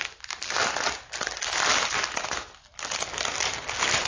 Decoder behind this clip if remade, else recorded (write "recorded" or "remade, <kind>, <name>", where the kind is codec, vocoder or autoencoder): recorded